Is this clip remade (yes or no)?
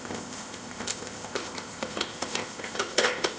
yes